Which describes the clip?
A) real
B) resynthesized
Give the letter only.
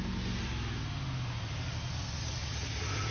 A